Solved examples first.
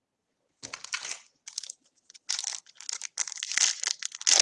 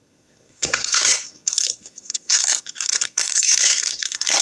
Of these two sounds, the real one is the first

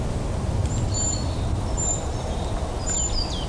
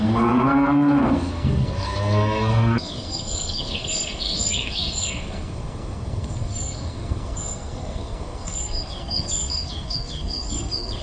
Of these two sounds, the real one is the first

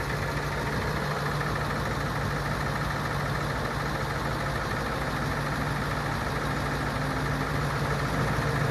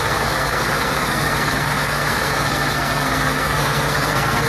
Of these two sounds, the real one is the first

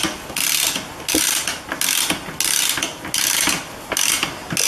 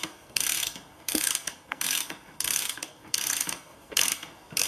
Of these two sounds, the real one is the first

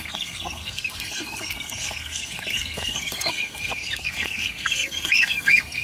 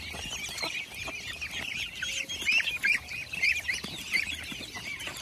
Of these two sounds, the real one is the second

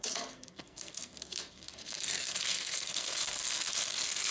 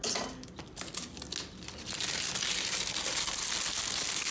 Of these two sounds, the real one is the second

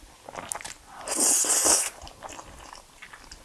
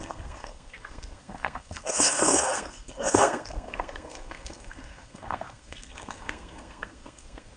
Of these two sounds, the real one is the first